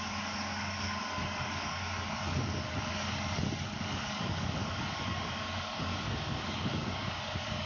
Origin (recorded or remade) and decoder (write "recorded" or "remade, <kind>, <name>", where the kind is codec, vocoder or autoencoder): remade, codec, DAC